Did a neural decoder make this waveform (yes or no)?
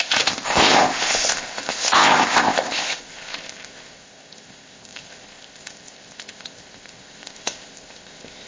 yes